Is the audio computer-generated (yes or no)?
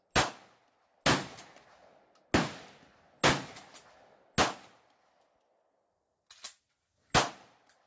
no